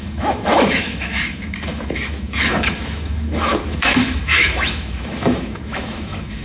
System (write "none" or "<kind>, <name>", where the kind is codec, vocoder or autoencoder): autoencoder, DAC-VAE